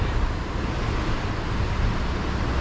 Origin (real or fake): real